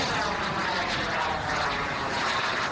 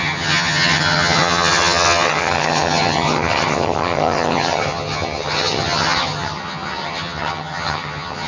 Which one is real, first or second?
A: first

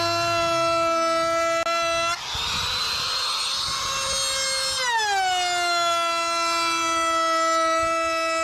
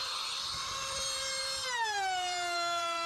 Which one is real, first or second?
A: first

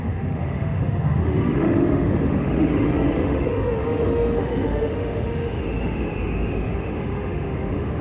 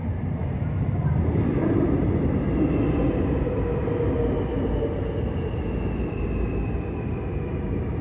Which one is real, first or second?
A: second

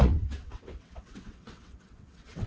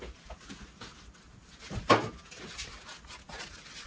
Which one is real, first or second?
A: second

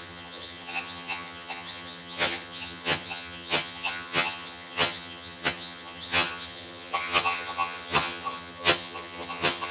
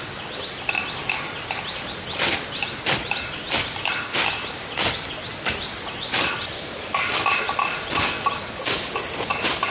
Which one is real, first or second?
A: second